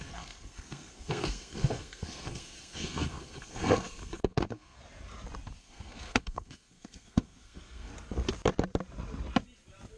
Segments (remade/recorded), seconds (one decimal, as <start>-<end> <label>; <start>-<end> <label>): 0.0-4.8 remade; 4.8-5.6 recorded; 5.6-7.9 remade; 7.9-10.0 recorded